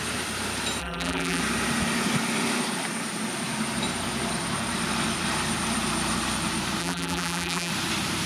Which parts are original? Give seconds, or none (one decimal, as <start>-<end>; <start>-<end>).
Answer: 0.0-0.8; 1.4-6.8; 7.7-8.3